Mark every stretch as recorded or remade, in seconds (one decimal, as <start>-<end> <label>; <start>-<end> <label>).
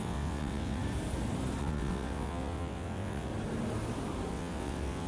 0.0-0.8 remade; 0.8-1.6 recorded; 1.6-3.3 remade; 3.3-4.3 recorded; 4.3-5.1 remade